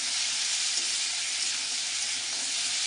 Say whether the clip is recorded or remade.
recorded